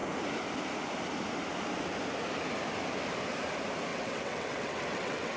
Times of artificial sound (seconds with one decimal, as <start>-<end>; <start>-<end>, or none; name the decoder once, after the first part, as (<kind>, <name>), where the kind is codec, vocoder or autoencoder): 3.9-5.4 (vocoder, WaveNeXt)